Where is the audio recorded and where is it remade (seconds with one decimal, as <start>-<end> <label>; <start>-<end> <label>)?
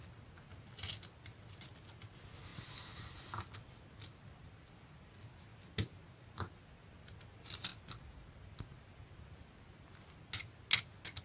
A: 0.0-11.2 recorded